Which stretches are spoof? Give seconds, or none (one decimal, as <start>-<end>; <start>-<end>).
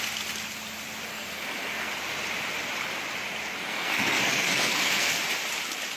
1.1-1.9; 3.6-5.2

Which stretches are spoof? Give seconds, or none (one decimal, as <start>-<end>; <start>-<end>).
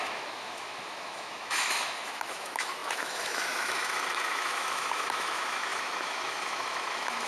0.0-7.3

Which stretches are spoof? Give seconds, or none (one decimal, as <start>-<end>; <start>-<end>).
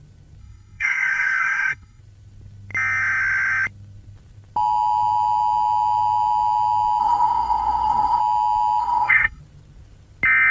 0.4-2.0; 7.0-8.2; 8.8-9.4